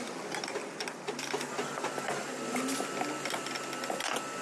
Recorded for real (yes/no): yes